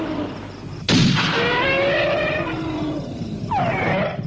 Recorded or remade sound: recorded